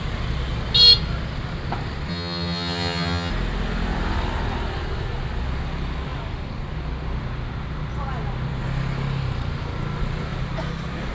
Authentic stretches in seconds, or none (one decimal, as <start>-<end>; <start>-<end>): 0.0-2.1; 3.3-11.1

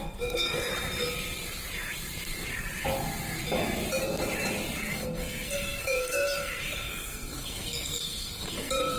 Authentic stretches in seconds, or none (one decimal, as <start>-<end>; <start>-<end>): 0.7-4.8

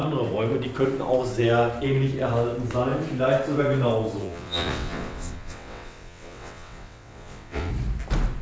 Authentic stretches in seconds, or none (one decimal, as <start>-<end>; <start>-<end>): 0.0-4.2; 7.7-8.4

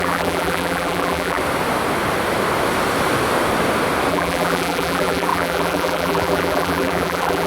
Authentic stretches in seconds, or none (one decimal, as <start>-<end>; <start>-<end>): 1.4-4.1

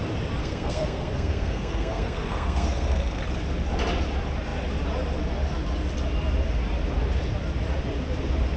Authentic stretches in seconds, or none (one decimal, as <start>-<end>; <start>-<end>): 0.0-0.4; 3.2-8.6

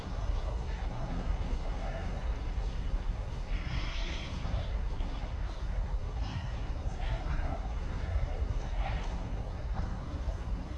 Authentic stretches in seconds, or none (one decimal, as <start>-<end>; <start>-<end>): none

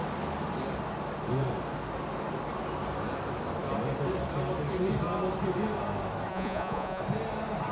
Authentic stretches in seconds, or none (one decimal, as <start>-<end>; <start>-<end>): 0.0-6.3; 7.0-7.7

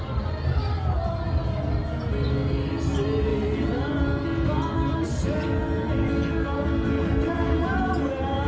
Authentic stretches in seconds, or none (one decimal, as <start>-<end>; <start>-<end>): 0.0-8.5